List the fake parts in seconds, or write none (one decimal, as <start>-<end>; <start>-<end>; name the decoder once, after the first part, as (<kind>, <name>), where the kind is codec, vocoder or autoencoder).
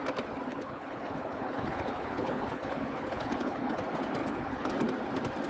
0.5-3.8 (codec, HILCodec); 4.2-4.7